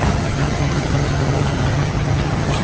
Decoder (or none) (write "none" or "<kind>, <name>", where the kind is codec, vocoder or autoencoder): vocoder, HiFi-GAN